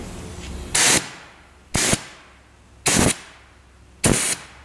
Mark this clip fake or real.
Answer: real